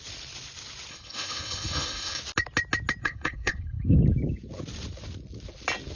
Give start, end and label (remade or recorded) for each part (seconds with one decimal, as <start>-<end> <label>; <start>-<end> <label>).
0.0-0.9 recorded; 0.9-2.2 remade; 2.2-3.0 recorded; 3.0-4.0 remade; 4.0-6.0 recorded